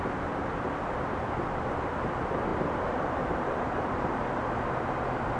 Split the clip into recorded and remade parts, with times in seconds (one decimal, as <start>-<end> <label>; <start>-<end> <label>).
0.0-2.5 recorded; 2.5-5.0 remade; 5.0-5.4 recorded